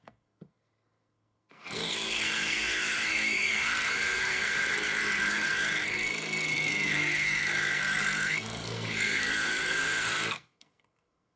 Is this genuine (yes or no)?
no